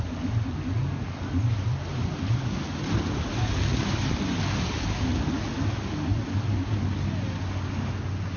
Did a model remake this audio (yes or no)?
no